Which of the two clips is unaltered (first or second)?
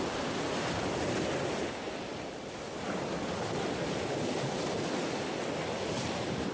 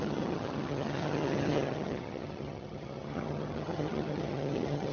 first